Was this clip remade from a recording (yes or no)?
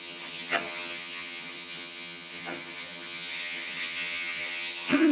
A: yes